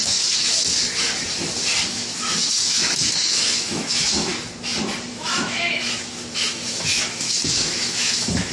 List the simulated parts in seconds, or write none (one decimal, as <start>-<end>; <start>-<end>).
0.0-0.6; 1.9-4.3; 5.1-8.5